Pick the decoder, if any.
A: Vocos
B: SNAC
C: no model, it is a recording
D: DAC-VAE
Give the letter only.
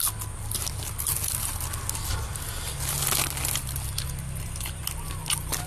C